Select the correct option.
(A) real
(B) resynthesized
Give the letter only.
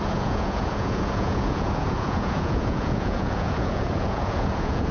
B